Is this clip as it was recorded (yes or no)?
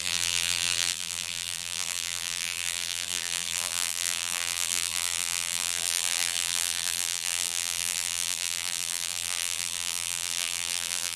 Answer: no